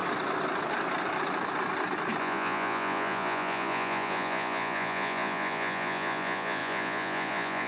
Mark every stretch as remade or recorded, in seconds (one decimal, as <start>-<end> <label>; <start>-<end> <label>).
0.0-2.2 recorded; 2.2-7.7 remade